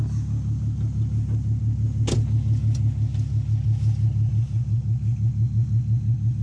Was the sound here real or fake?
real